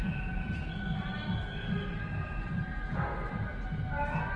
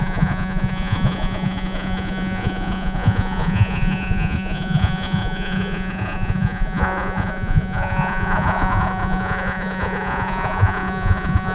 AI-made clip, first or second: second